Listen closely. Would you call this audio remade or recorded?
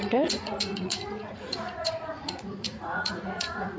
remade